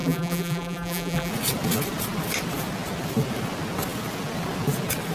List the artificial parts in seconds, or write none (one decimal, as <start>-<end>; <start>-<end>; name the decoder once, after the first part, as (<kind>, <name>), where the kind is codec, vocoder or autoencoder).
0.0-1.3 (vocoder, BigVGAN v2)